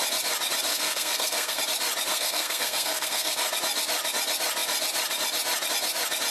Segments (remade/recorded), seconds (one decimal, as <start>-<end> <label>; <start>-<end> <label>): 0.0-0.7 recorded; 0.7-1.6 remade; 1.6-2.1 recorded; 2.1-3.5 remade; 3.5-6.3 recorded